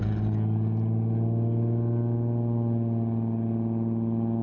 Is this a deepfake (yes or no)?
no